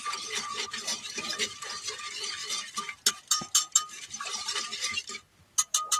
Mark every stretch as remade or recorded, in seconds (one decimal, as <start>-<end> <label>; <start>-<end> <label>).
0.0-0.9 remade; 0.9-4.3 recorded; 4.3-6.0 remade

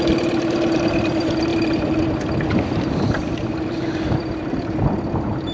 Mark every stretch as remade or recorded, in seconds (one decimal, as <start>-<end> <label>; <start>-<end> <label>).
0.0-5.5 recorded

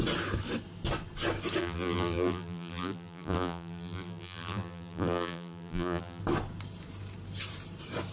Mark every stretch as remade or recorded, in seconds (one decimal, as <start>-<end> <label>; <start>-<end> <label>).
0.0-1.6 recorded; 1.6-6.2 remade; 6.2-8.1 recorded

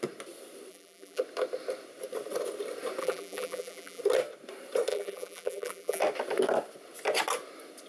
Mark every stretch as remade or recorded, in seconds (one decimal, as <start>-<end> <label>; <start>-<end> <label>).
0.0-0.7 recorded; 0.7-1.2 remade; 1.2-3.0 recorded; 3.0-4.0 remade; 4.0-4.9 recorded; 4.9-6.0 remade; 6.0-7.9 recorded

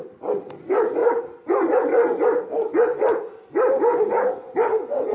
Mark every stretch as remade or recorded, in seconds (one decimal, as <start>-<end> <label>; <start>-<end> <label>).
0.0-1.0 recorded; 1.0-4.1 remade; 4.1-5.1 recorded

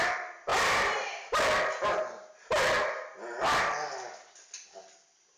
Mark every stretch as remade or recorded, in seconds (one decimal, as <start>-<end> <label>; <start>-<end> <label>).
0.0-0.5 remade; 0.5-2.3 recorded; 2.3-5.4 remade